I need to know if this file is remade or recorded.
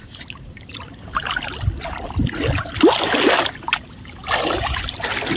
recorded